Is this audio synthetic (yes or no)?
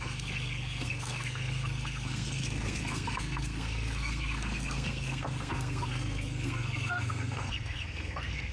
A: yes